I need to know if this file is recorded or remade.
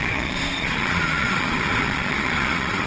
remade